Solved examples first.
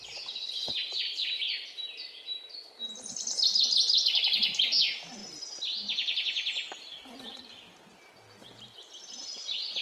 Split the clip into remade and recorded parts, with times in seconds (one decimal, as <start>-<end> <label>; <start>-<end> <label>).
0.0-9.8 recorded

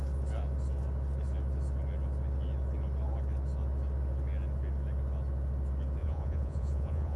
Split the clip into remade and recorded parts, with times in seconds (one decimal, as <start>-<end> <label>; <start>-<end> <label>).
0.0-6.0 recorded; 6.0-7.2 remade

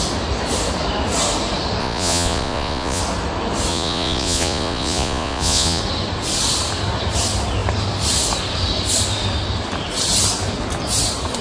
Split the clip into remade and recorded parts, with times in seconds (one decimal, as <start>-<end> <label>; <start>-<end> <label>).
0.0-1.8 recorded; 1.8-3.0 remade; 3.0-3.7 recorded; 3.7-5.8 remade; 5.8-11.4 recorded